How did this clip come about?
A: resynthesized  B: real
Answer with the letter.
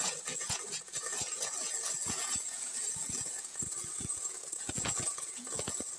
A